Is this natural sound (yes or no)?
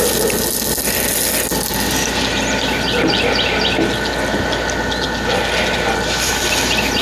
yes